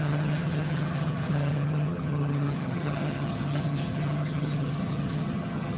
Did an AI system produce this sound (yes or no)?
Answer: yes